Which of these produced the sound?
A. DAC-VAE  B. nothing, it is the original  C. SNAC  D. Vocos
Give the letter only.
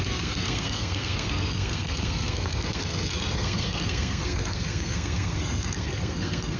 C